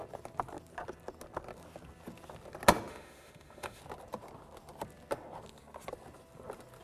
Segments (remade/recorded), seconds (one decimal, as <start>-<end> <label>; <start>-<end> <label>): 0.0-2.9 recorded; 2.9-3.8 remade; 3.8-6.8 recorded